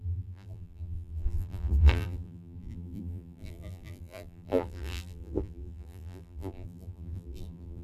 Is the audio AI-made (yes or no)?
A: yes